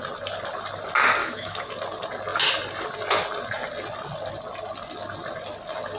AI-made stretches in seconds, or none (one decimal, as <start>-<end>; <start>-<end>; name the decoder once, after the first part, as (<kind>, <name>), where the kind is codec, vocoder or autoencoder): 1.2-1.7 (autoencoder, DAC-VAE)